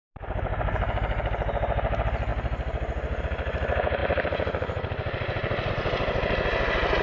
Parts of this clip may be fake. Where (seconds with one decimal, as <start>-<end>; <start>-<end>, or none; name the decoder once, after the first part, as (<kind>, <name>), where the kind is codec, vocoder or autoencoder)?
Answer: none